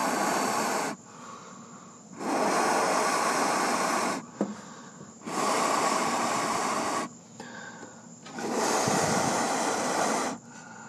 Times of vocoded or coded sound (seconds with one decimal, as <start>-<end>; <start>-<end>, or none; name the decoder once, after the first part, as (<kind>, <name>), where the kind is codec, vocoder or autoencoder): none